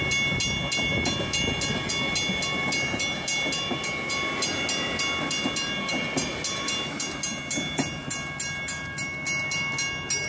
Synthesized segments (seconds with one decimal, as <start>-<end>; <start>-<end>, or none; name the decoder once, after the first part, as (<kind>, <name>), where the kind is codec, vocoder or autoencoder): none